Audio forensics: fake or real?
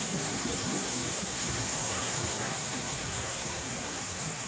fake